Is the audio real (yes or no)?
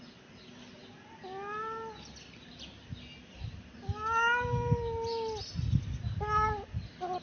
yes